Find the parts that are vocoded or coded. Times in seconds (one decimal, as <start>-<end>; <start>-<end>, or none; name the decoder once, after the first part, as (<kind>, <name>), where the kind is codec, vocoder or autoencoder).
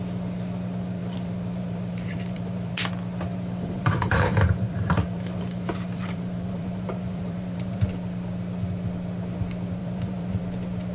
1.0-2.7 (vocoder, BigVGAN v2); 3.3-7.9; 9.8-10.4